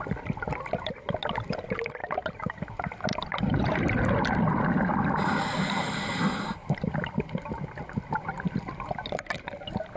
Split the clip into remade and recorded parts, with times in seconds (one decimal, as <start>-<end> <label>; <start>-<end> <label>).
0.0-2.0 recorded; 2.0-2.5 remade; 2.5-3.1 recorded; 3.1-4.6 remade; 4.6-6.6 recorded; 6.6-8.7 remade; 8.7-10.0 recorded